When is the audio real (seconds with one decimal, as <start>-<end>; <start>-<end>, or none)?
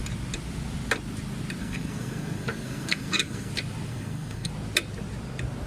0.0-1.6; 3.5-3.9; 4.5-5.7